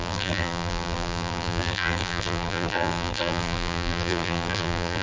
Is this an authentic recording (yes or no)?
no